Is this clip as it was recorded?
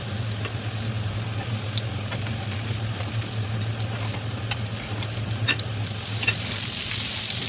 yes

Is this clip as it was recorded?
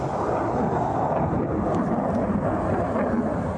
yes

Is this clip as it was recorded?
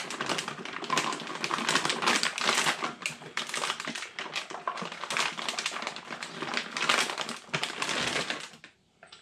yes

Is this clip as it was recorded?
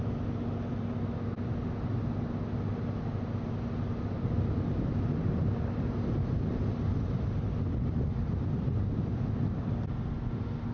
yes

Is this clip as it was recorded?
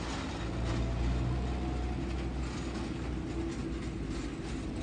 yes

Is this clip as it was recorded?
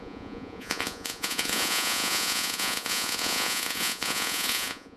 no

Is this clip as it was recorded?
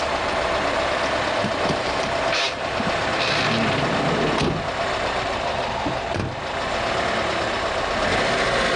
yes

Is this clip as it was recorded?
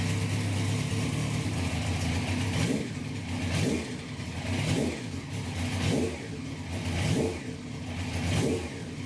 yes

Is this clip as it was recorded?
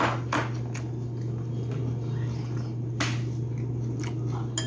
yes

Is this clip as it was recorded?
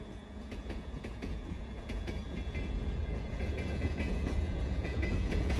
no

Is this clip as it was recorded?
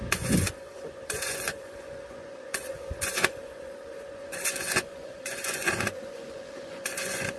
no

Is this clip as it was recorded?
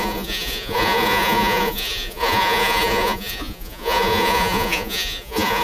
no